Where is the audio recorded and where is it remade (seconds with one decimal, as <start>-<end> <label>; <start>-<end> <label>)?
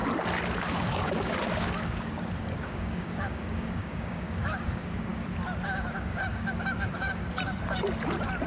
0.0-0.7 recorded; 0.7-5.1 remade; 5.1-5.9 recorded; 5.9-7.2 remade; 7.2-8.5 recorded